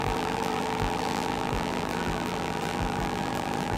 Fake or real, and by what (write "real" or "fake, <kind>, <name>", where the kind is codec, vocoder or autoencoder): fake, vocoder, BigVGAN v2